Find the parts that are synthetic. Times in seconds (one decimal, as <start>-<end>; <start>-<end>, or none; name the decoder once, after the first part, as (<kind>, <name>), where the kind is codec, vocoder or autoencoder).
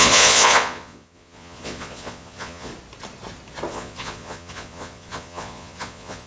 0.0-2.7 (vocoder, Vocos); 3.7-6.3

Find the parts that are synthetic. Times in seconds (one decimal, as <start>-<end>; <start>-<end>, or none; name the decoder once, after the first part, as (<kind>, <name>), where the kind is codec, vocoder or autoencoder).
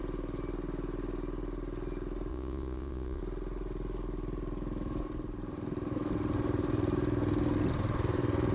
2.3-3.2 (vocoder, Vocos)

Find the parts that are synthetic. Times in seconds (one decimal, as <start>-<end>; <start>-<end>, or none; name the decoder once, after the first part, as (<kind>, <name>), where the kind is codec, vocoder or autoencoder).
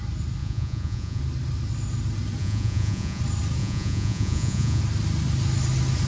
0.4-1.2 (vocoder, Vocos); 2.4-3.2; 3.6-4.8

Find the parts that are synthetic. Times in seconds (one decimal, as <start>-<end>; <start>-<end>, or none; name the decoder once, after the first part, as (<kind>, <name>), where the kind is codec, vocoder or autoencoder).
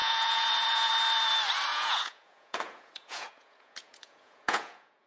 0.0-0.9 (vocoder, Vocos); 1.7-5.1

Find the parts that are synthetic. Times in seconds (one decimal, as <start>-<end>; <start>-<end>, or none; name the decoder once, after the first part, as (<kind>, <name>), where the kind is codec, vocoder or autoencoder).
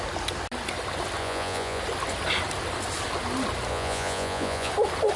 1.2-1.8 (vocoder, Vocos); 3.7-4.7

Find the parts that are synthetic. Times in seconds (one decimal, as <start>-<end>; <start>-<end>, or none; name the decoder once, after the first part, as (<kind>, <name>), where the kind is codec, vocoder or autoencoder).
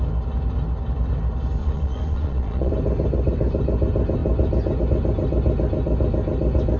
1.6-2.7 (vocoder, Vocos)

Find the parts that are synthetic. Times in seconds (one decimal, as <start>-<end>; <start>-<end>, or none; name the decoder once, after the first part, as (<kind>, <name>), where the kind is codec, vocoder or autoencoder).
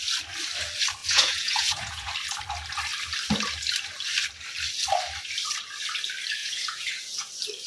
1.0-2.1 (vocoder, Vocos); 6.4-7.3